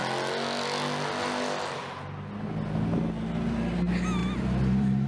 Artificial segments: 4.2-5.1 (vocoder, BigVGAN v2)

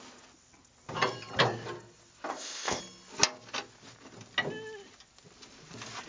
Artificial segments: 2.3-2.8 (codec, ZipCodec)

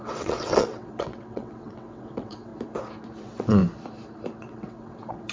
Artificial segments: 0.0-2.5 (vocoder, WaveNeXt); 3.2-3.6; 4.4-5.3

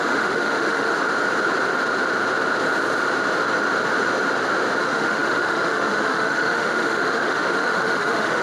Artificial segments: 0.0-0.9 (autoencoder, DAC-VAE); 4.8-8.4

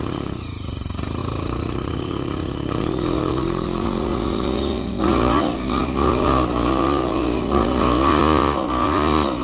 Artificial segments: 0.0-9.4 (vocoder, Vocos)